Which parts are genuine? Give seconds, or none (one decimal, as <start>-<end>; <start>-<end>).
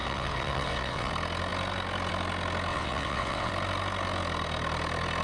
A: 1.1-2.7; 3.5-5.2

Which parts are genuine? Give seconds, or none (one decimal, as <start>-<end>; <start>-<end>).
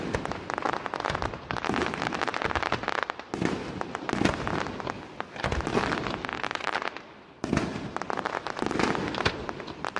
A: 0.0-6.3; 7.1-7.7; 8.3-10.0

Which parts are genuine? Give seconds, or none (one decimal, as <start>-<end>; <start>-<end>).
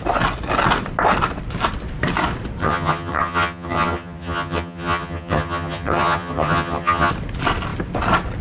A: 0.0-2.6; 7.1-8.4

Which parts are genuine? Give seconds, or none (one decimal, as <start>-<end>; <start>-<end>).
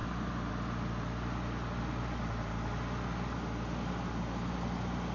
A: 0.0-5.1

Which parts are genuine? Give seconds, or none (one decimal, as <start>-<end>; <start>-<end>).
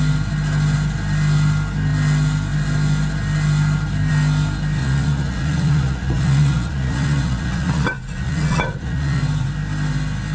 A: 0.0-4.8; 9.2-10.3